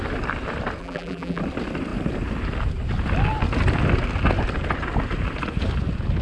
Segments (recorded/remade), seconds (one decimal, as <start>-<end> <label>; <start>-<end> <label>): 0.0-0.8 recorded; 0.8-1.4 remade; 1.4-6.2 recorded